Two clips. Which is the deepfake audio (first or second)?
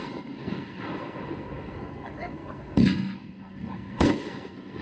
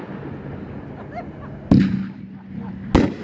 first